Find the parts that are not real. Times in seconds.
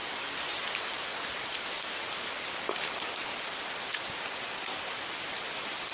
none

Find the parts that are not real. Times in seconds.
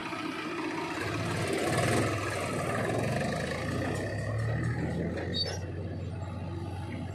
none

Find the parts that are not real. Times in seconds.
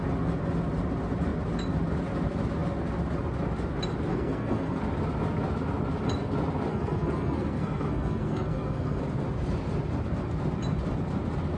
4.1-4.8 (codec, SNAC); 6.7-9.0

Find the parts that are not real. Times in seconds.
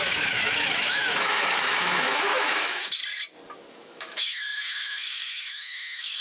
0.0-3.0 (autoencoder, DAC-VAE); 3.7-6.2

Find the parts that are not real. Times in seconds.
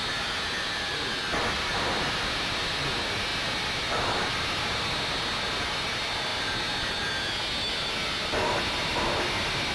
none